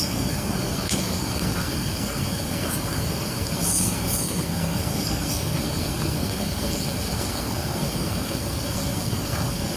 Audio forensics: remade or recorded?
remade